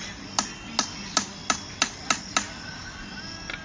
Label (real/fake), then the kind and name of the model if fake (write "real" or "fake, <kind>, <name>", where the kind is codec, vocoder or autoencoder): real